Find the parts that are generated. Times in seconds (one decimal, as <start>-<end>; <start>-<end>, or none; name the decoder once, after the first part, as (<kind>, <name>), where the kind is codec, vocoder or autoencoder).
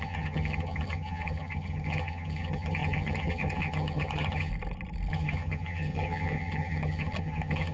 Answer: 0.0-4.5 (vocoder, HiFi-GAN); 5.1-7.7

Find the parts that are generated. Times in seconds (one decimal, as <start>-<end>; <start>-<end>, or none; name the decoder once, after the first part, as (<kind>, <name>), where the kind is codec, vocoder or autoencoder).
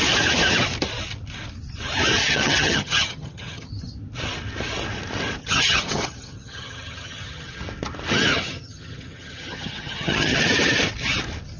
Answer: 2.2-3.7 (vocoder, HiFi-GAN); 5.4-7.6; 8.3-10.4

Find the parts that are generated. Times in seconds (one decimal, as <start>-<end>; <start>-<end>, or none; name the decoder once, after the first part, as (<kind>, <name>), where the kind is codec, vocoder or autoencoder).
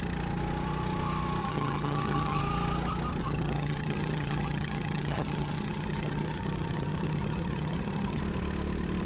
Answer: 1.4-2.4 (vocoder, HiFi-GAN); 3.2-8.2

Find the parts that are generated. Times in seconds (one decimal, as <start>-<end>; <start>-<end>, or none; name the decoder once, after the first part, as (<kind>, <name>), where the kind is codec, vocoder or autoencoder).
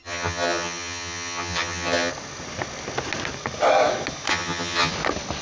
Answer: 0.0-2.1 (vocoder, HiFi-GAN); 4.3-4.9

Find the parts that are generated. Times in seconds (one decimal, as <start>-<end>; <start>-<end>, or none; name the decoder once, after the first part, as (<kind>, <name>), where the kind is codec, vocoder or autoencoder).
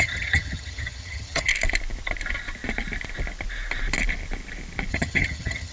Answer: 0.0-1.5 (vocoder, HiFi-GAN); 4.9-5.7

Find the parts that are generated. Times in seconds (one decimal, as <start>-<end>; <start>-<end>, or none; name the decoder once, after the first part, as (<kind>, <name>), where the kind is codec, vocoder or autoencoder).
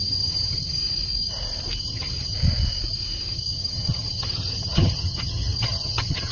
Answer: 0.0-0.8 (vocoder, HiFi-GAN); 1.8-2.3; 3.3-6.3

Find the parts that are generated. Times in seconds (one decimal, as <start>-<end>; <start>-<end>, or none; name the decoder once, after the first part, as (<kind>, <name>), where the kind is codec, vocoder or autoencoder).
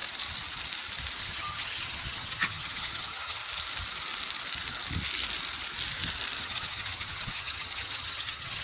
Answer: 1.2-3.4 (vocoder, HiFi-GAN); 6.4-8.6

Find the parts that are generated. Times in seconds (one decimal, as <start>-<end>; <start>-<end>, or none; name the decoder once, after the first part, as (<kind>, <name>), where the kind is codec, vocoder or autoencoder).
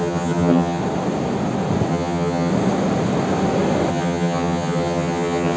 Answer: 0.0-0.8 (vocoder, HiFi-GAN); 1.9-2.5; 3.9-5.6